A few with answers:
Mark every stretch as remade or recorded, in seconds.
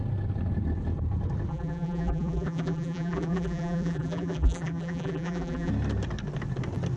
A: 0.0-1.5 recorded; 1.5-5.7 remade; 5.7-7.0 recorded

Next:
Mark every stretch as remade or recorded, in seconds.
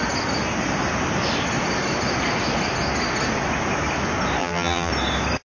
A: 0.0-4.4 recorded; 4.4-4.9 remade; 4.9-5.5 recorded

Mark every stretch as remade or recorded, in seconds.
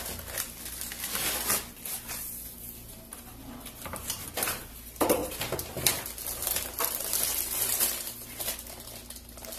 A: 0.0-5.2 recorded; 5.2-8.7 remade; 8.7-9.6 recorded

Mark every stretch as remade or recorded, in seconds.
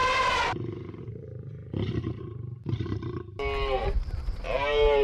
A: 0.0-0.9 recorded; 0.9-1.6 remade; 1.6-2.2 recorded; 2.2-5.0 remade